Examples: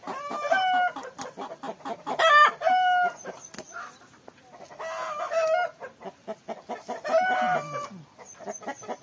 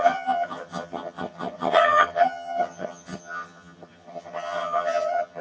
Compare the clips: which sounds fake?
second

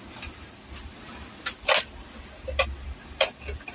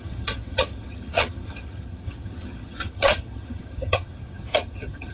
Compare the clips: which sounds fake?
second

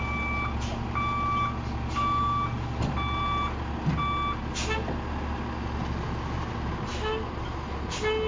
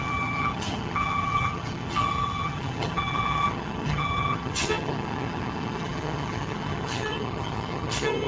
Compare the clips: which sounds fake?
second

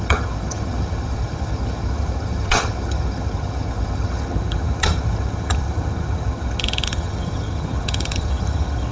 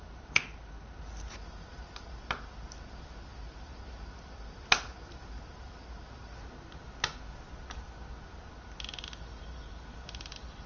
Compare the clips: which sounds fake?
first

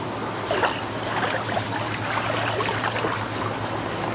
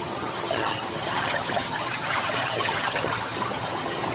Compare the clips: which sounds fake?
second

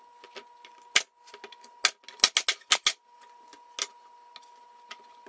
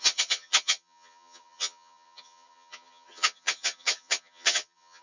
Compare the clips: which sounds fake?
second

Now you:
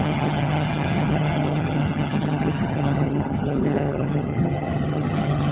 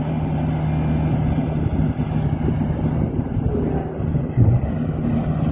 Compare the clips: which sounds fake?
first